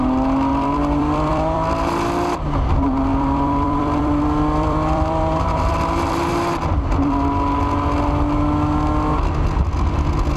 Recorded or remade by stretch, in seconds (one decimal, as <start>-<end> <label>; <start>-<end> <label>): 0.0-0.5 recorded; 0.5-1.7 remade; 1.7-3.1 recorded; 3.1-6.3 remade; 6.3-10.4 recorded